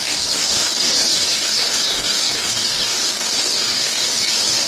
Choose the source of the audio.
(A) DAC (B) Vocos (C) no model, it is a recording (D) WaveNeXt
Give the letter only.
A